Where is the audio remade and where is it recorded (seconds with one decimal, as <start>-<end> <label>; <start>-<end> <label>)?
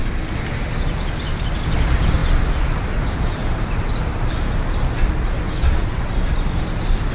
0.0-5.8 recorded; 5.8-6.6 remade; 6.6-7.1 recorded